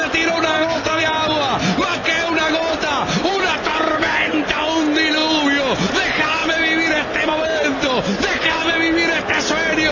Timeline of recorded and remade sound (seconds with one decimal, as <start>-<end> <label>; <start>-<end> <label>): 0.0-0.5 recorded; 0.5-1.0 remade; 1.0-9.9 recorded

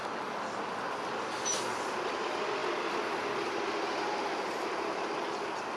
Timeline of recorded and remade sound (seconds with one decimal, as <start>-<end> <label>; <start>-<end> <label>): 0.0-5.8 recorded

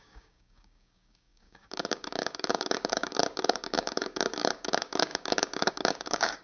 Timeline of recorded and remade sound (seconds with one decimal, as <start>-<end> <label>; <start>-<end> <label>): 0.0-6.4 remade

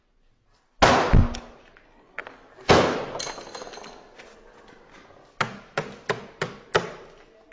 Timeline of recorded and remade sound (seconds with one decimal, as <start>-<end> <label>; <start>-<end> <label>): 0.0-7.5 recorded